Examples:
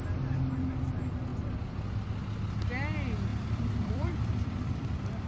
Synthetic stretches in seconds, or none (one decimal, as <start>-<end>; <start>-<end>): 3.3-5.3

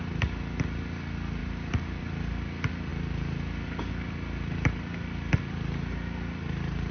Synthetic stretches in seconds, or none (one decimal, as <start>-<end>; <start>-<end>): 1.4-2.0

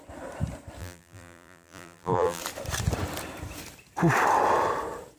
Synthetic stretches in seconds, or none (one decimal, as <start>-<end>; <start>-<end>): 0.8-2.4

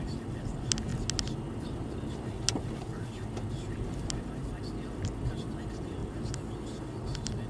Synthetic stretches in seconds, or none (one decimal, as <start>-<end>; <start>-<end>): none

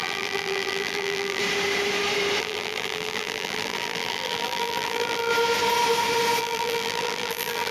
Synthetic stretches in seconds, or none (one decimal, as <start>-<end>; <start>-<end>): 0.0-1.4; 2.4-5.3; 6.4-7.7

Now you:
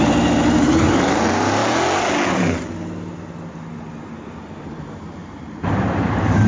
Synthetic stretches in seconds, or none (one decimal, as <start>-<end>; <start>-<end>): 0.0-1.6; 4.6-6.5

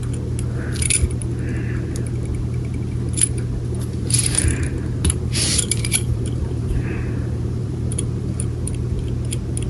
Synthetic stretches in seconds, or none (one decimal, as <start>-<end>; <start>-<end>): 4.0-8.7